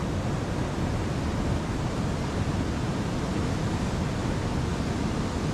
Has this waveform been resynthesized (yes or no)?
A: no